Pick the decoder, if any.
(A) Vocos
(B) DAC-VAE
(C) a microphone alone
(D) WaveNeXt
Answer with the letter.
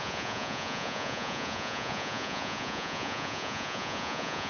A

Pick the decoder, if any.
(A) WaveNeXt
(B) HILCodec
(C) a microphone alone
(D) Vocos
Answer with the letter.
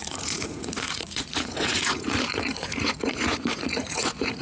D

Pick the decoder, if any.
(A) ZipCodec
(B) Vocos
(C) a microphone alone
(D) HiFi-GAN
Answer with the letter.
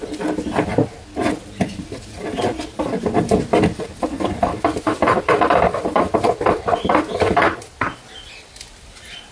C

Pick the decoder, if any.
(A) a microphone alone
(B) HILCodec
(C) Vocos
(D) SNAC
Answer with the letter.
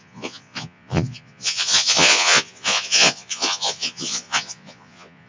C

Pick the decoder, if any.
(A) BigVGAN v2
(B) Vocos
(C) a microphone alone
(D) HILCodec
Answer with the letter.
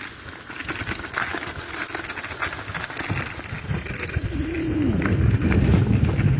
C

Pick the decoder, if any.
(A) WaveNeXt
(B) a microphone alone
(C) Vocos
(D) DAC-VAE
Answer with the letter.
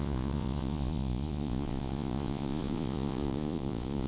C